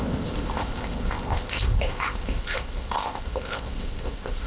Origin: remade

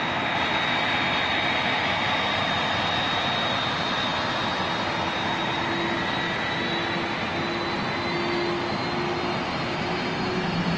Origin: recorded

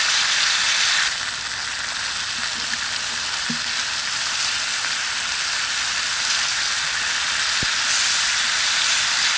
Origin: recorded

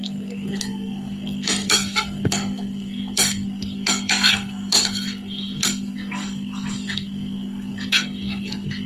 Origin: remade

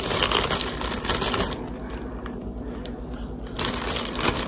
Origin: recorded